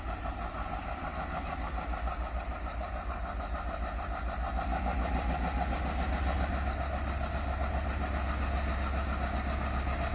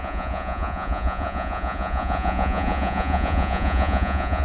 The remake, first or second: second